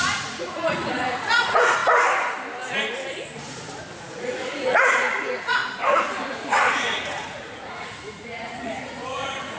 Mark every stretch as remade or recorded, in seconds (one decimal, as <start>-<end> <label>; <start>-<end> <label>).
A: 0.0-1.8 remade; 1.8-4.0 recorded; 4.0-5.6 remade; 5.6-6.3 recorded; 6.3-9.6 remade